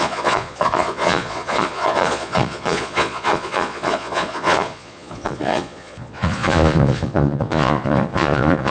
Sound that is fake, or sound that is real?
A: fake